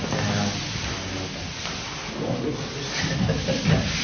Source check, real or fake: real